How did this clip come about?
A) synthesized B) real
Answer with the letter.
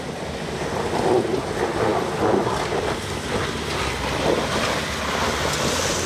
B